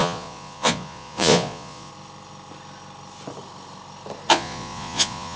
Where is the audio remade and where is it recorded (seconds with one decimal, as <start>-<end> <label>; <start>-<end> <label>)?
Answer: 0.0-1.9 remade; 1.9-4.3 recorded; 4.3-5.4 remade